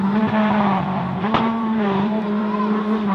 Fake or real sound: fake